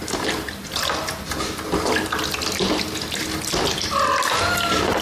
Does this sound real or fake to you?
real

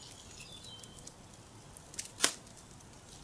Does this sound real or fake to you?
real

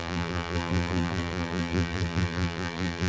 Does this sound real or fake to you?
fake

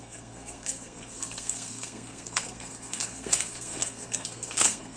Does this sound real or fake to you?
fake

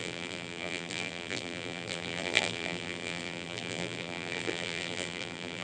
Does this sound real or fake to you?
fake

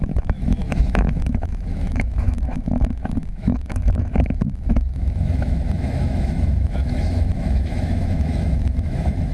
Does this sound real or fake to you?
fake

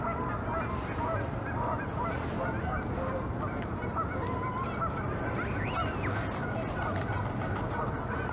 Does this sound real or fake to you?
real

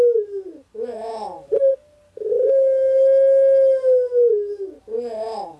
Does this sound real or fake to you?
real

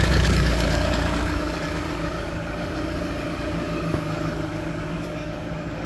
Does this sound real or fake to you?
fake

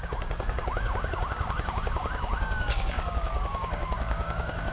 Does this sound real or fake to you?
fake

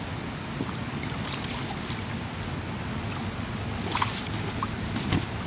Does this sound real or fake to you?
real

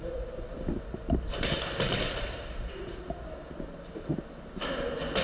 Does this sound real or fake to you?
real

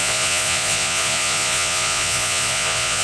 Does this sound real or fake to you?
fake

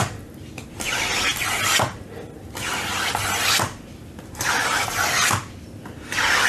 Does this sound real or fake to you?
real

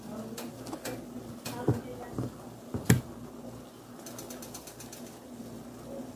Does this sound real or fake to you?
real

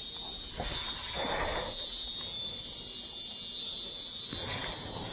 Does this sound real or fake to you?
real